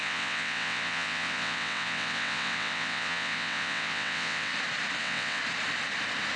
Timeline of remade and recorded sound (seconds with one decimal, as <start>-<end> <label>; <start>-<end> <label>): 0.0-4.5 remade; 4.5-5.0 recorded; 5.0-5.4 remade; 5.4-6.4 recorded